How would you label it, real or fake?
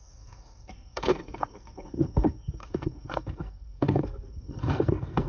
fake